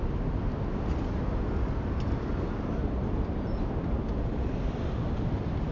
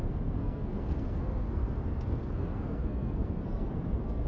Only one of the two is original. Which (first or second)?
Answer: first